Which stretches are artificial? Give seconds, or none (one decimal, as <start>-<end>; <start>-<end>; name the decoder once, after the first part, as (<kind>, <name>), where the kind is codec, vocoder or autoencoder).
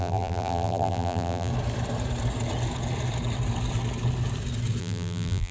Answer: 0.0-1.5 (vocoder, BigVGAN v2); 4.8-5.5